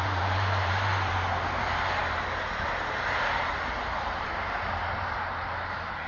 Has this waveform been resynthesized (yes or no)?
yes